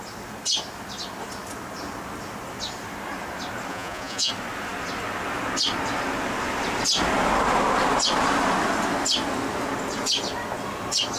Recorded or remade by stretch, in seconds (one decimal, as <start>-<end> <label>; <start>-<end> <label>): 0.0-3.7 recorded; 3.7-4.3 remade; 4.3-11.2 recorded